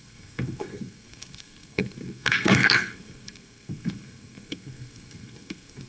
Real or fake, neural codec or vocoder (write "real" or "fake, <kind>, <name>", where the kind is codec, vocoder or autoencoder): fake, codec, SNAC